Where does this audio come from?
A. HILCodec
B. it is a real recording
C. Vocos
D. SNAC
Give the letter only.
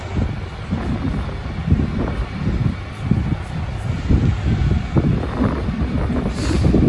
B